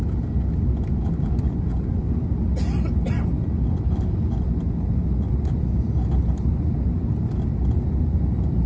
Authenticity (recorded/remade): recorded